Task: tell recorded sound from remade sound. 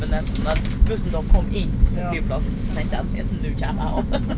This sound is recorded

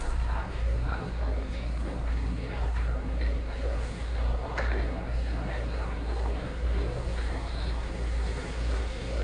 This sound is remade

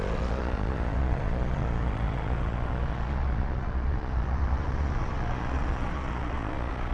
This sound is remade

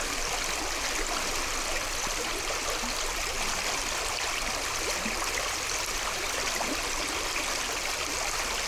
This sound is recorded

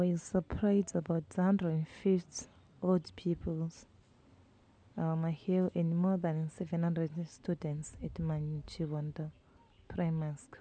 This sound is recorded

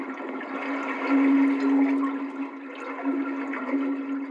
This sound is recorded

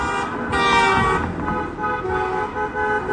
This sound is recorded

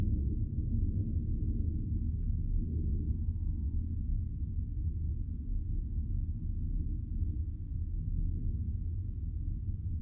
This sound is recorded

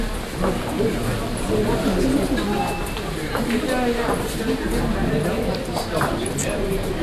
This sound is recorded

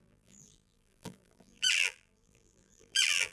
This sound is remade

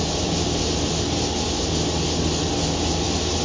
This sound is recorded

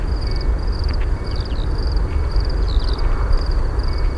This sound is recorded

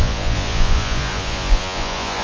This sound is remade